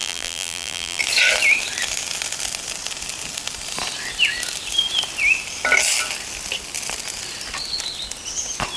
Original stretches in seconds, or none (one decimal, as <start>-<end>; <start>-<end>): 1.0-8.8

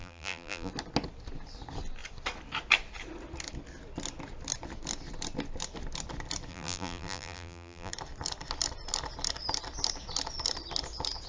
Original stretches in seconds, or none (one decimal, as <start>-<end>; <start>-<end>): 0.7-6.5; 7.9-11.3